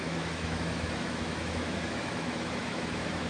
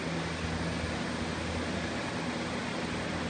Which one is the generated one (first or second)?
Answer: first